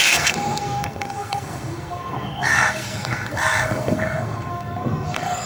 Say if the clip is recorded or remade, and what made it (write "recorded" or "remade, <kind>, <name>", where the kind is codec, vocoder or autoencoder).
remade, codec, SNAC